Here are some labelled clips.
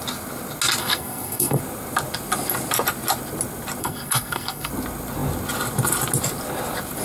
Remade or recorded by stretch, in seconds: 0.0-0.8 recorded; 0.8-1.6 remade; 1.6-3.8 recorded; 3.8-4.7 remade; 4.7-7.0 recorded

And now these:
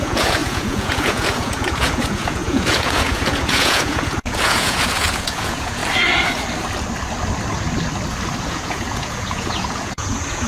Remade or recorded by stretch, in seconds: 0.0-5.8 remade; 5.8-8.4 recorded; 8.4-10.5 remade

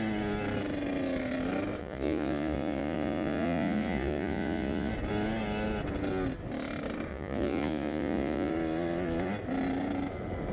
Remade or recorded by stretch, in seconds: 0.0-1.8 recorded; 1.8-4.9 remade; 4.9-7.1 recorded; 7.1-8.5 remade; 8.5-10.5 recorded

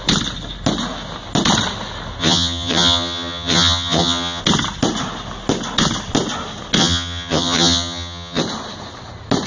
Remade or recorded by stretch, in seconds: 0.0-2.2 recorded; 2.2-4.4 remade; 4.4-6.8 recorded; 6.8-8.4 remade; 8.4-9.5 recorded

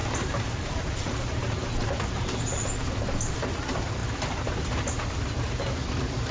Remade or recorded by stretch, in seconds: 0.0-1.9 remade; 1.9-6.3 recorded